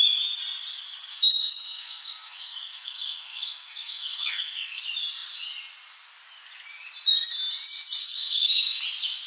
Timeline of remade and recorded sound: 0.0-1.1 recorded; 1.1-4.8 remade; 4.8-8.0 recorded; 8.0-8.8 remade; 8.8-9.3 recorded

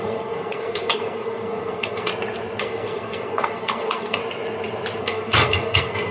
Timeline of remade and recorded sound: 0.0-2.1 remade; 2.1-2.6 recorded; 2.6-4.2 remade; 4.2-5.0 recorded; 5.0-6.1 remade